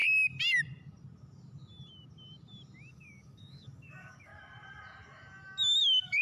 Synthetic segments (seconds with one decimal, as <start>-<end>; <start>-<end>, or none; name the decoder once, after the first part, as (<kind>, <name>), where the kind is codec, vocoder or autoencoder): 2.9-4.3 (codec, DAC); 5.8-6.2